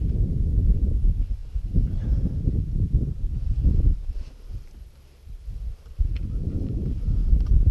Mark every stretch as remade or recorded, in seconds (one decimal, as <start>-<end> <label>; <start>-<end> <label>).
0.0-7.7 remade